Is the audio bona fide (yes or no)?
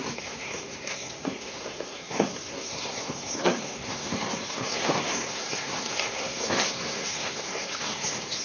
no